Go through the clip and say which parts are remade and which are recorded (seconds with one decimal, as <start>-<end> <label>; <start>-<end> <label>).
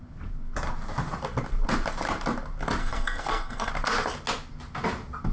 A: 0.0-2.8 recorded; 2.8-3.7 remade; 3.7-5.3 recorded